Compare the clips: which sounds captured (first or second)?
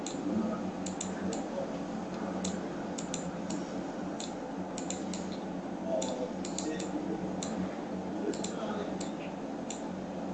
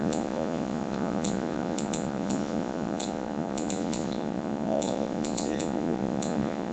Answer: first